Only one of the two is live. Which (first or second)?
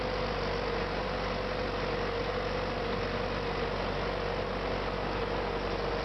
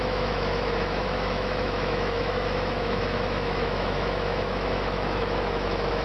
first